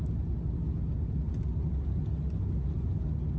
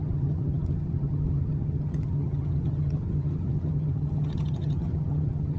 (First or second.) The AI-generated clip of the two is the second